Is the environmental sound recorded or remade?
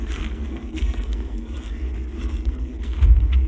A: remade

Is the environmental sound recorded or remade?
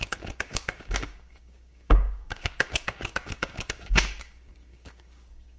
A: remade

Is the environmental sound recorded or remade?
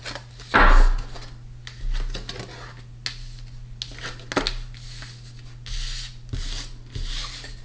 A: recorded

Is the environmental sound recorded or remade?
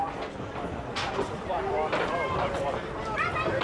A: remade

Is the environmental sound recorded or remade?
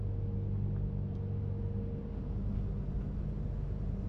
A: recorded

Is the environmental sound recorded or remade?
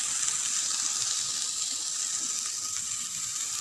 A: recorded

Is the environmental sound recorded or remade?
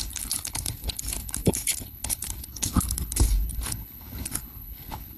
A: remade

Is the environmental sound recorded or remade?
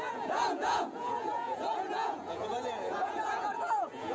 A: remade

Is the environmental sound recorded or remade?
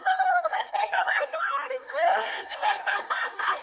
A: remade